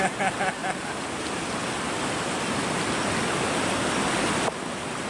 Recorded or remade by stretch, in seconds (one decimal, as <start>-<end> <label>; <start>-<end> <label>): 0.0-5.1 recorded